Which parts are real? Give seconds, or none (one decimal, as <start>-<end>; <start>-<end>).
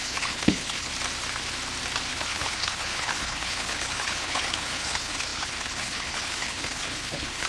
0.9-2.1